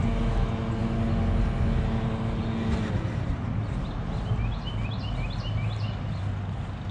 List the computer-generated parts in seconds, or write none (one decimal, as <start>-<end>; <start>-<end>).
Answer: none